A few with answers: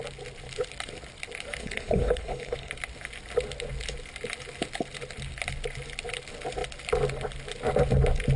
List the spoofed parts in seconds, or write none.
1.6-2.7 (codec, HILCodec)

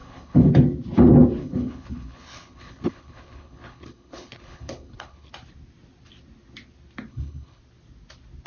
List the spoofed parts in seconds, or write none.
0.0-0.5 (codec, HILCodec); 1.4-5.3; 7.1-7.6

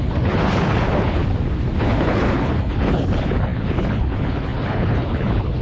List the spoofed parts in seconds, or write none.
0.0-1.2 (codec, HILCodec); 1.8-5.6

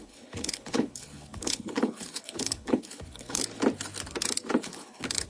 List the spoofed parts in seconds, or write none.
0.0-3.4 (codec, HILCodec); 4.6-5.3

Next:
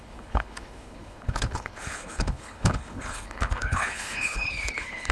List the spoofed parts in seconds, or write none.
0.0-5.1 (codec, HILCodec)

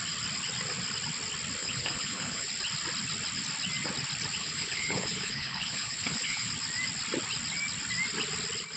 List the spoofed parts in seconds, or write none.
1.6-2.5 (codec, HILCodec); 4.4-6.5

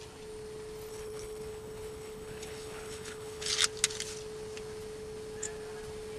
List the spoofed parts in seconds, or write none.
0.9-3.5 (codec, HILCodec)

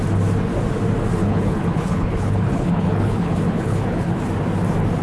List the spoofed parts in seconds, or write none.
1.2-4.2 (codec, HILCodec)